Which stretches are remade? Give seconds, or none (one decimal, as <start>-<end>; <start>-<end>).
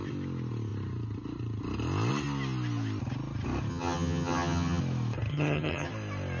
3.7-4.8; 5.3-5.9